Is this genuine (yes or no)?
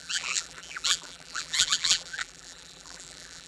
no